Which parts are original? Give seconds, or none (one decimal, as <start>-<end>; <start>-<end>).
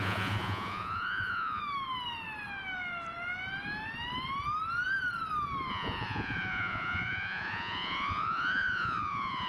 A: 1.6-5.7